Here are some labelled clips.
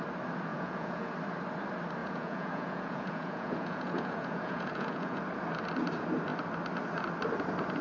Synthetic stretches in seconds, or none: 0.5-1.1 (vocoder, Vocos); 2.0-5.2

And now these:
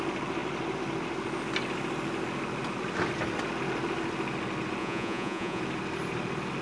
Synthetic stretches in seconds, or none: 4.8-5.6 (vocoder, Vocos)